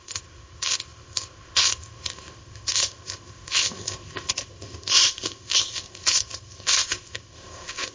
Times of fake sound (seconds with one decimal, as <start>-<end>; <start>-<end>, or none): 0.0-7.9